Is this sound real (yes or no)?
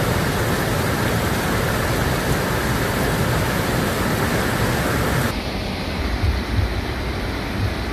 yes